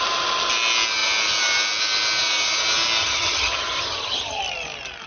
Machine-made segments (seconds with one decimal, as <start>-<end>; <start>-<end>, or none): 3.0-4.4